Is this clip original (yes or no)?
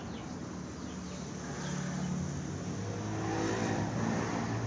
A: yes